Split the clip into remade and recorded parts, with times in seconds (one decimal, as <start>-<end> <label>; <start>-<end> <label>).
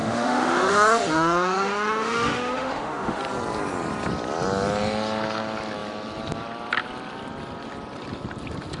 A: 0.0-3.2 remade; 3.2-8.8 recorded